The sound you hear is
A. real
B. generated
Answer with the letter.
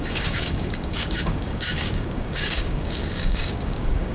B